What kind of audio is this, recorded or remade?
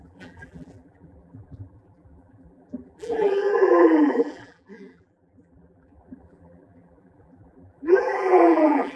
remade